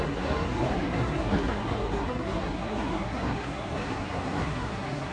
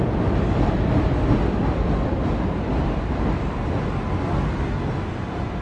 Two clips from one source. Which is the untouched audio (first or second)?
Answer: second